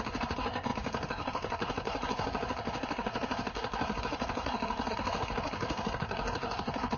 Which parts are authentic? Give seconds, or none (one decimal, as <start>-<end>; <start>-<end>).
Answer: none